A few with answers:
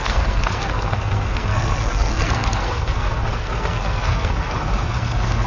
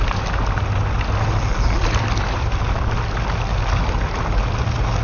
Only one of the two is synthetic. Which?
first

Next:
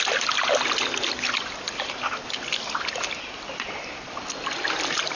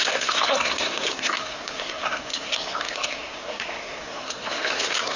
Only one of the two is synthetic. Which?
second